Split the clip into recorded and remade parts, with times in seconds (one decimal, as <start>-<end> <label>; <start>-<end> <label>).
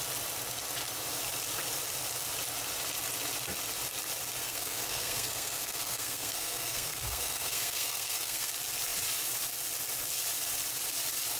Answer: 0.0-4.4 recorded; 4.4-8.5 remade; 8.5-11.4 recorded